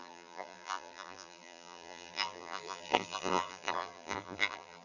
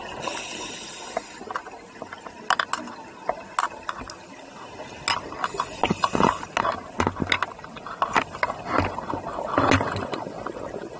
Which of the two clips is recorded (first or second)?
second